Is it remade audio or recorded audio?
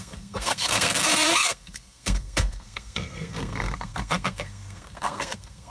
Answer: remade